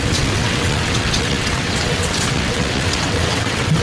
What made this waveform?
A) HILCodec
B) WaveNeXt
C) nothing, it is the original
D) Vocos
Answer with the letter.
B